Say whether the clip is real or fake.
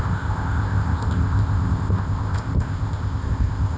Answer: fake